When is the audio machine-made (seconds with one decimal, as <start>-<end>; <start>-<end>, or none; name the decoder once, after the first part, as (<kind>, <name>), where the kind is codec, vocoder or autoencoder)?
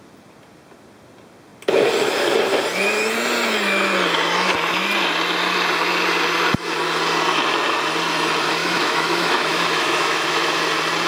8.6-10.6 (autoencoder, DAC-VAE)